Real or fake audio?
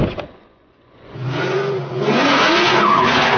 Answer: fake